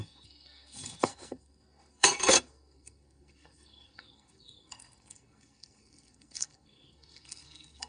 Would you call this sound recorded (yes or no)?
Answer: no